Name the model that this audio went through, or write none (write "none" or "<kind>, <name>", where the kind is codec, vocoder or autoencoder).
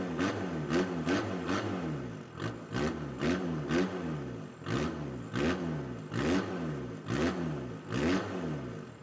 none